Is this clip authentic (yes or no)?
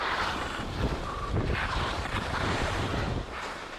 no